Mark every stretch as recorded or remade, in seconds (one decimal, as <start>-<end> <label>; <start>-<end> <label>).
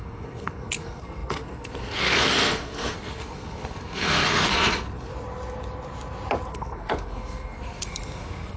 0.0-5.1 remade; 5.1-6.5 recorded; 6.5-8.6 remade